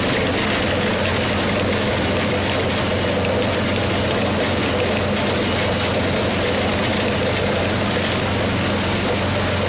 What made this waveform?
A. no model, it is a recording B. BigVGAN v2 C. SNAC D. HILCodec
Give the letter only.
A